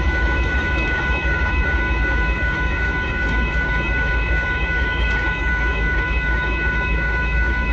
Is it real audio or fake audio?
fake